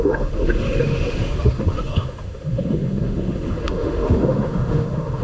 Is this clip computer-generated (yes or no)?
yes